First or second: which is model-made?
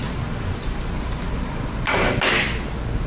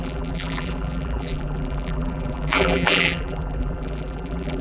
second